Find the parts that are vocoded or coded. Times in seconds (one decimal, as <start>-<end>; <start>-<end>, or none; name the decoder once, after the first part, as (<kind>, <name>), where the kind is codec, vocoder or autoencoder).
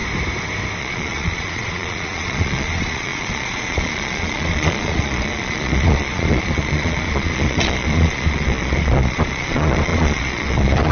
0.8-10.9 (vocoder, Vocos)